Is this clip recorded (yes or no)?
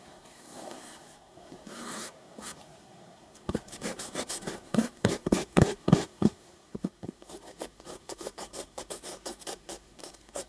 no